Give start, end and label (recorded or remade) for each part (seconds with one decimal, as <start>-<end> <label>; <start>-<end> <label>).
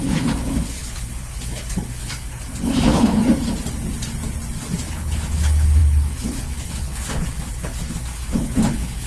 0.0-3.2 remade; 3.2-4.9 recorded; 4.9-9.1 remade